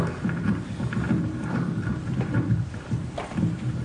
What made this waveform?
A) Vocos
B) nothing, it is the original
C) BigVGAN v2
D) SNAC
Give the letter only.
C